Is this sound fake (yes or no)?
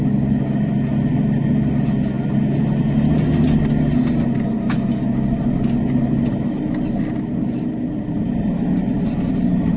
no